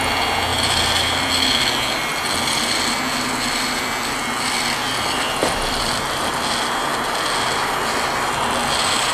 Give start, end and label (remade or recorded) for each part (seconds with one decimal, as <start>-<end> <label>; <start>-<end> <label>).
0.0-0.5 recorded; 0.5-1.3 remade; 1.3-5.4 recorded; 5.4-6.1 remade; 6.1-9.1 recorded